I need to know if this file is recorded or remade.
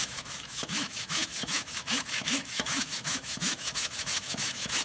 remade